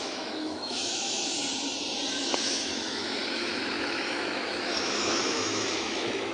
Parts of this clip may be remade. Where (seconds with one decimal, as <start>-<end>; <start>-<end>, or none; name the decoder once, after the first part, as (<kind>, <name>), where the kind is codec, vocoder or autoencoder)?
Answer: 0.0-1.3 (autoencoder, DAC-VAE); 2.1-6.3